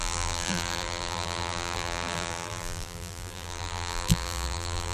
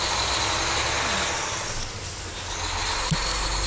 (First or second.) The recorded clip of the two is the second